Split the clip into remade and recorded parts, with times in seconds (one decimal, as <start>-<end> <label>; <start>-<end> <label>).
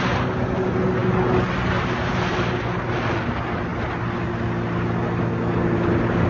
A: 0.0-6.3 recorded